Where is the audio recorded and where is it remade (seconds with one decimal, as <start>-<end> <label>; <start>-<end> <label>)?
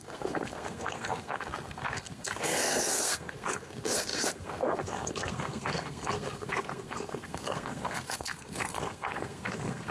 0.0-9.9 remade